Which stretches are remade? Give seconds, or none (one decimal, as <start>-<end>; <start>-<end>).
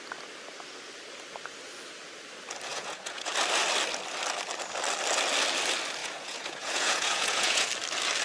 2.7-3.3; 6.0-7.7